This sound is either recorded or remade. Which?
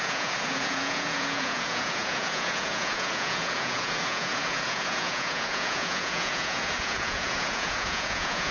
remade